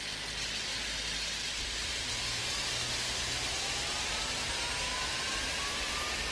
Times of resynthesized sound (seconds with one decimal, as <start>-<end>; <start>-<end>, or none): 4.9-5.4